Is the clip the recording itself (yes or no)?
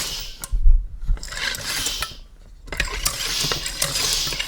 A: yes